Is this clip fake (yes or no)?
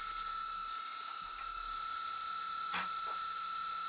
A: no